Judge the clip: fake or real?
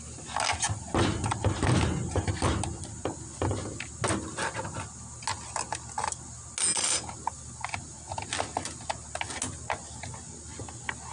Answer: real